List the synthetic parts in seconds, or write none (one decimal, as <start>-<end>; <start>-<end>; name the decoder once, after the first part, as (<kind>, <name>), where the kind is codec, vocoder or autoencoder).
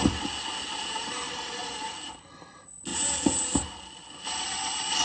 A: 1.6-2.2 (vocoder, BigVGAN v2)